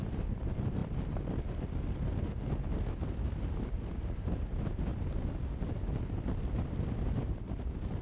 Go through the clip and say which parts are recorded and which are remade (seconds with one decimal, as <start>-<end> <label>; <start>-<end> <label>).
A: 0.0-8.0 recorded